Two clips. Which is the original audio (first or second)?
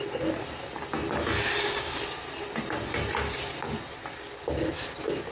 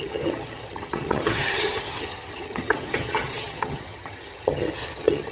first